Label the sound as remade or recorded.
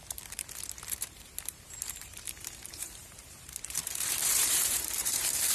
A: remade